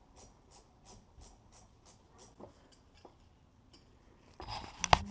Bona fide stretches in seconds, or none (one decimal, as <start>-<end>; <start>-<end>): 0.0-5.1